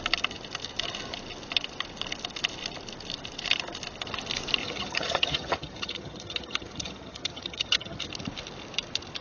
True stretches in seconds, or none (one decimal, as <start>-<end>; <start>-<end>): 0.0-4.6; 8.1-9.2